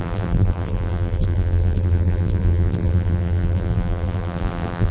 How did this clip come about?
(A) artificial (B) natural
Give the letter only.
A